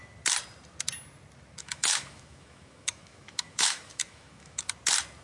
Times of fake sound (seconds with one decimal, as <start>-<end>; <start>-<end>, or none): 1.6-4.7